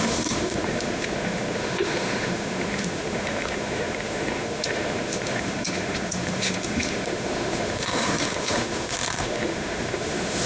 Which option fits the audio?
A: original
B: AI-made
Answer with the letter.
B